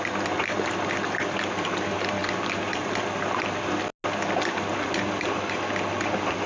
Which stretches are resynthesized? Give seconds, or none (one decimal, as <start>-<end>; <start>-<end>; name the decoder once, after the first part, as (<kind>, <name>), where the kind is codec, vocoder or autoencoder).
none

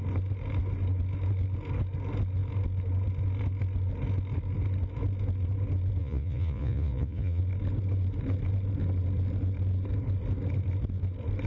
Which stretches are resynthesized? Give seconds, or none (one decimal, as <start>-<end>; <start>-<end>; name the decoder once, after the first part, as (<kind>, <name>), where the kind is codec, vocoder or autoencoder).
6.0-7.4 (vocoder, Vocos)

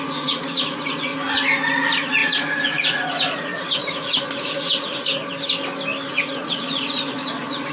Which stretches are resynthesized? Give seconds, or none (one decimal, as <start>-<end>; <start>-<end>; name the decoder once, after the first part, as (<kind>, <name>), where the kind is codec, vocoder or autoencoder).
0.0-1.1 (vocoder, Vocos); 1.8-5.2; 6.1-7.7

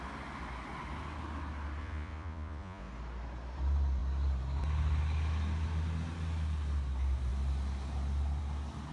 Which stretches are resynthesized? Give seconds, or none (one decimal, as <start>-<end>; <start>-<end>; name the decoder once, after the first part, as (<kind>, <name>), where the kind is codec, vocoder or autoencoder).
1.8-2.9 (vocoder, Vocos)